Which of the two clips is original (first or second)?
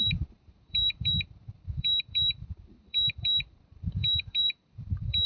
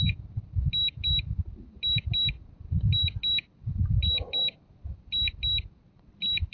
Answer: second